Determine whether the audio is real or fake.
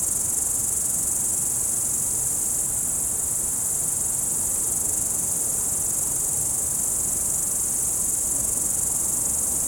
real